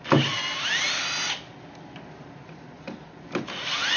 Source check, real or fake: real